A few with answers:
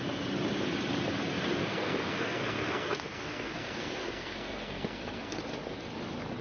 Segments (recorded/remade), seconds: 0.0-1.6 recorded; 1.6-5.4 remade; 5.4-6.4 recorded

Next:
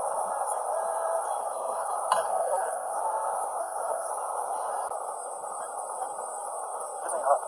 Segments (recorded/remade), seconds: 0.0-1.4 recorded; 1.4-1.9 remade; 1.9-2.3 recorded; 2.3-3.0 remade; 3.0-3.6 recorded; 3.6-4.1 remade; 4.1-7.5 recorded

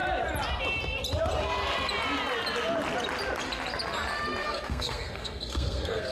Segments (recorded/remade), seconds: 0.0-4.4 recorded; 4.4-6.1 remade

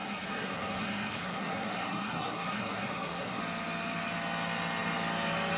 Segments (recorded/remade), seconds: 0.0-3.4 remade; 3.4-5.6 recorded

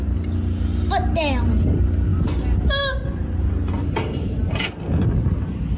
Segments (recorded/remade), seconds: 0.0-5.8 recorded